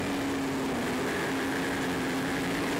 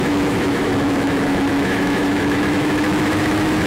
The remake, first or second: second